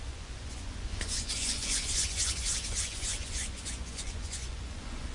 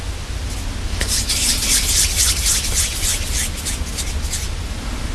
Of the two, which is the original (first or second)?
second